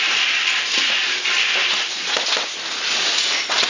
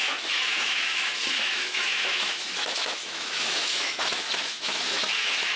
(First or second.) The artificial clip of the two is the second